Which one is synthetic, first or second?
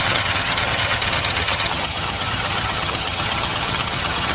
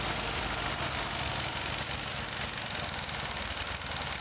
first